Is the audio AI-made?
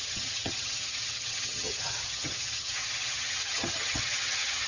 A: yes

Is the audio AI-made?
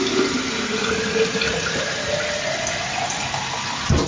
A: no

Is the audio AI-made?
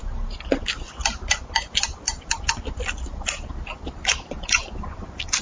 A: no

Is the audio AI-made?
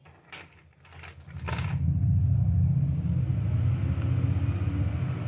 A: no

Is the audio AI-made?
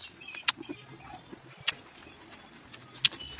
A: no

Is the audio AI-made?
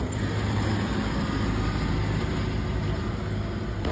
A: no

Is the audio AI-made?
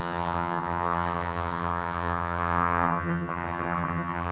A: yes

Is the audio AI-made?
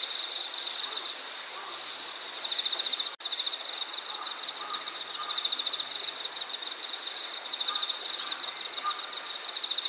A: no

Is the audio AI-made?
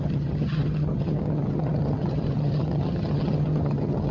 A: yes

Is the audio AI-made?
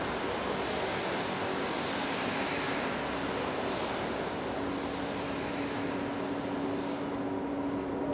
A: no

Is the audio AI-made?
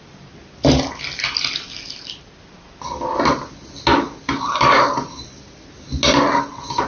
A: no